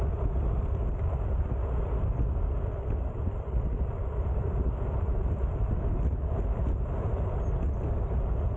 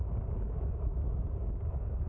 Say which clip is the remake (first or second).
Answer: second